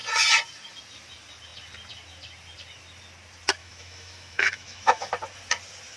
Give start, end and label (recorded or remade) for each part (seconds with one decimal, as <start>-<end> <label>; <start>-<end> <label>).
0.0-3.6 recorded; 3.6-5.1 remade; 5.1-6.0 recorded